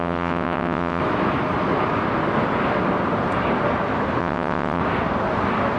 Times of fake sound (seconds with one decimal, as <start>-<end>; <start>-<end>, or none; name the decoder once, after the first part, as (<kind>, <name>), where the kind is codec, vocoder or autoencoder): 0.0-1.0 (vocoder, WaveNeXt); 4.2-4.8